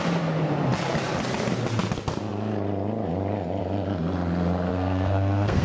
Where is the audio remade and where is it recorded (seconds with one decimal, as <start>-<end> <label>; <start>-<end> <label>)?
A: 0.0-4.7 recorded; 4.7-5.6 remade